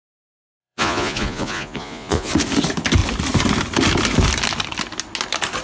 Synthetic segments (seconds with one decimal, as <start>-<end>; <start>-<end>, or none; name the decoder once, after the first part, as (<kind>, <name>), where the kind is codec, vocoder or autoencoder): 0.6-2.3 (vocoder, Vocos)